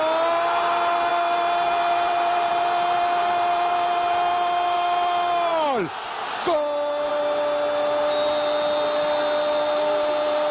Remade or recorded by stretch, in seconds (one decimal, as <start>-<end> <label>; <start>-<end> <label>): 0.0-1.1 recorded; 1.1-2.5 remade; 2.5-10.5 recorded